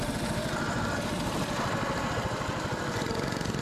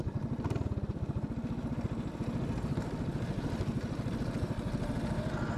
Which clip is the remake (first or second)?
first